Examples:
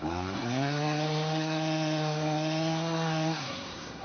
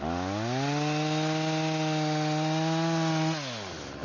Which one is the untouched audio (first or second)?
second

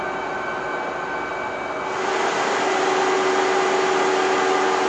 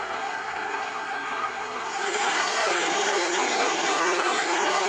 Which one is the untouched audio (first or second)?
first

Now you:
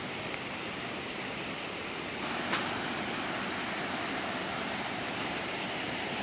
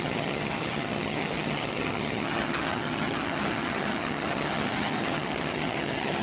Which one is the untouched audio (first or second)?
first